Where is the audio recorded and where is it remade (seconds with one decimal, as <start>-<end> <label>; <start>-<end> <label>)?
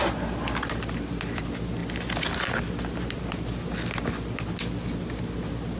0.0-5.8 recorded